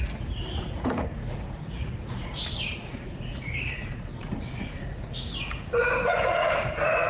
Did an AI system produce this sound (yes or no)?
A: yes